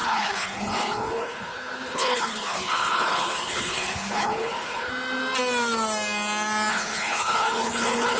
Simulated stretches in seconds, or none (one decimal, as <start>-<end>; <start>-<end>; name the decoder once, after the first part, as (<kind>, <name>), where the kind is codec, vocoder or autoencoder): 0.0-4.9 (codec, HILCodec); 6.7-8.2